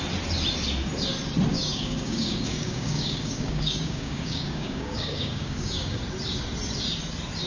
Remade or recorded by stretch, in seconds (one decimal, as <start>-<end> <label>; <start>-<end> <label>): 0.0-1.5 recorded; 1.5-6.0 remade; 6.0-7.5 recorded